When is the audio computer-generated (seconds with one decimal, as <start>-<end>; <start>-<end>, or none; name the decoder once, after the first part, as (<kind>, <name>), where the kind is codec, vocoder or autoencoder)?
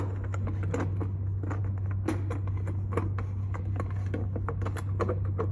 none